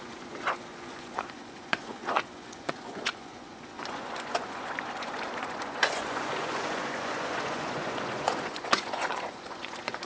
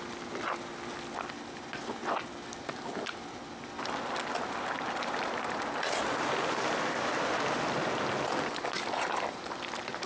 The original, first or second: second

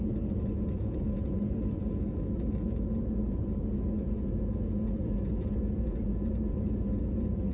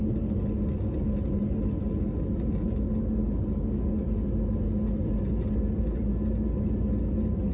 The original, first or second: second